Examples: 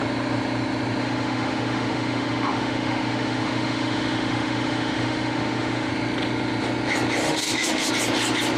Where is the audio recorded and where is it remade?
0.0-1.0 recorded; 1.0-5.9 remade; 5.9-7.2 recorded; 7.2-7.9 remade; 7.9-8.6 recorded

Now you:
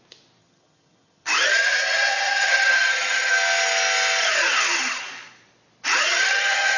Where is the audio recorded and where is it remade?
0.0-0.4 recorded; 0.4-3.3 remade; 3.3-4.2 recorded; 4.2-5.0 remade; 5.0-5.9 recorded; 5.9-6.8 remade

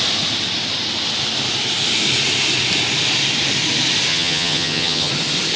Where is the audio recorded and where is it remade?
0.0-4.1 recorded; 4.1-5.1 remade; 5.1-5.6 recorded

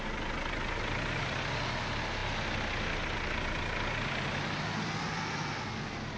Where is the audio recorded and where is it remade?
0.0-6.2 recorded

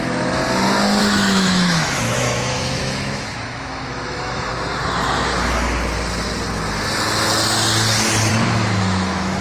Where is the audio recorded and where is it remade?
0.0-0.4 remade; 0.4-1.0 recorded; 1.0-4.5 remade; 4.5-8.3 recorded; 8.3-9.4 remade

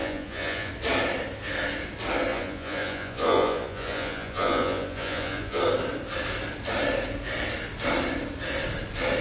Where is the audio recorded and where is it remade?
0.0-0.7 remade; 0.7-2.3 recorded; 2.3-5.6 remade; 5.6-9.2 recorded

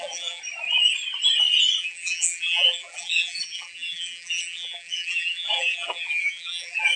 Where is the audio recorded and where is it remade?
0.0-0.4 remade; 0.4-1.8 recorded; 1.8-7.0 remade